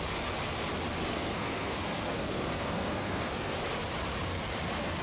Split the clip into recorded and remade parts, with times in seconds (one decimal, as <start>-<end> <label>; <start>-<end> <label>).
0.0-1.0 recorded; 1.0-3.5 remade; 3.5-5.0 recorded